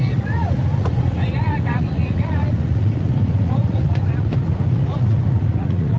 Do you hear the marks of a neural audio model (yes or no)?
yes